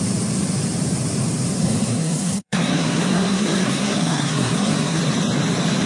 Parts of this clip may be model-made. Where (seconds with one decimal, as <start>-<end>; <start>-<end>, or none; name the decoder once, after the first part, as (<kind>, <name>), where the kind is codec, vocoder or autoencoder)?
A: 1.6-5.0 (codec, SNAC)